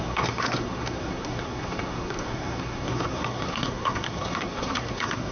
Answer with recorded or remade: remade